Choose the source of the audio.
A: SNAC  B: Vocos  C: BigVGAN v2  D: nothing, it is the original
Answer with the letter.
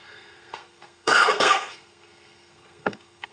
A